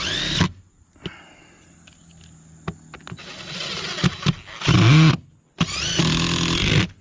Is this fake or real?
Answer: real